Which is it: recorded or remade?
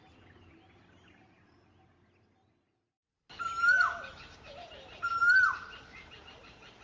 recorded